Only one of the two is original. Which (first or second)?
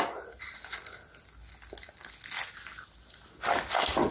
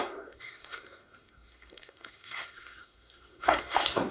first